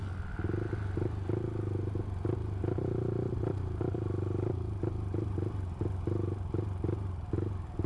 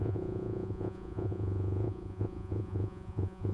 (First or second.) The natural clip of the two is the first